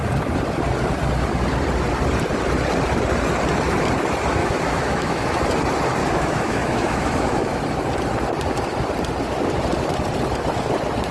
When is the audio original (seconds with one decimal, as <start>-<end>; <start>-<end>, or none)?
0.0-4.4; 5.4-6.0; 7.6-11.1